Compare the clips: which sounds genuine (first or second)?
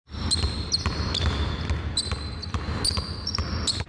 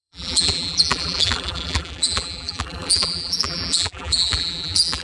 first